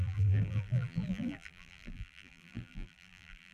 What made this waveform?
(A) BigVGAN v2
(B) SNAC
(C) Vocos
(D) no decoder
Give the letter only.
A